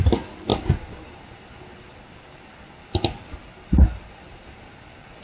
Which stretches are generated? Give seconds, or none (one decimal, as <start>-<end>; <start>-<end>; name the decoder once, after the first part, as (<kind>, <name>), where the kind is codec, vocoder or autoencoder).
0.5-1.4 (vocoder, BigVGAN v2); 3.4-4.8